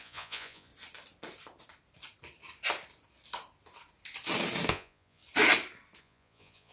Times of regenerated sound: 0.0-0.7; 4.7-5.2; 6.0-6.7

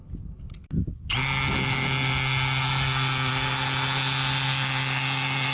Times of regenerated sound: none

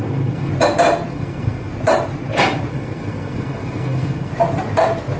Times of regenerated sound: 0.0-0.5; 1.1-1.7; 2.7-4.3

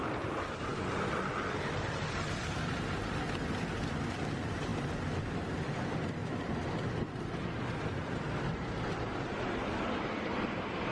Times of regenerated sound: 6.2-7.2

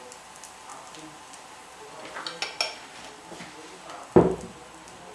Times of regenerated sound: none

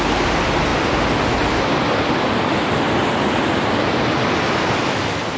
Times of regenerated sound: none